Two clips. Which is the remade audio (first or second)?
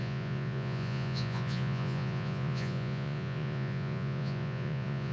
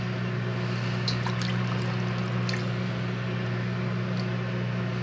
first